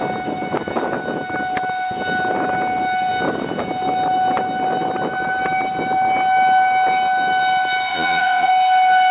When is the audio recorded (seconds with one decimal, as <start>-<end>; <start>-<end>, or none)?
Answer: 0.0-7.9; 8.5-9.1